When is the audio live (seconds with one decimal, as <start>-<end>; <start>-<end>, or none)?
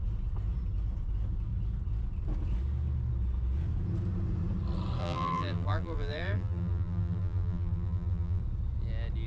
0.0-5.0; 8.4-9.3